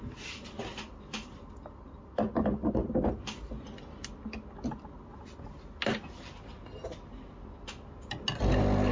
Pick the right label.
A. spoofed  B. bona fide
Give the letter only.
B